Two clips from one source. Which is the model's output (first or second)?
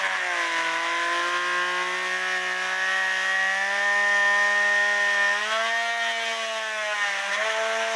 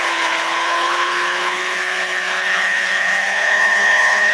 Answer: second